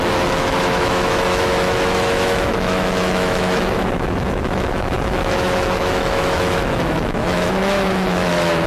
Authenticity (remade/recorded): remade